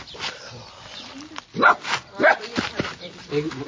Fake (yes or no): yes